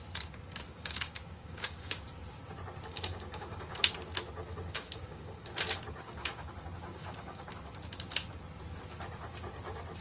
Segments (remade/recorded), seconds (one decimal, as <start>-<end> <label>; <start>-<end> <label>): 0.0-0.7 recorded; 0.7-2.0 remade; 2.0-2.9 recorded; 2.9-3.9 remade; 3.9-4.5 recorded; 4.5-6.5 remade; 6.5-6.9 recorded; 6.9-7.5 remade; 7.5-10.0 recorded